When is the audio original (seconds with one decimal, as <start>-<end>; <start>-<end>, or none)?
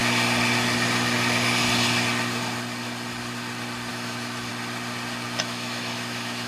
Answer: 0.0-3.9; 4.5-5.4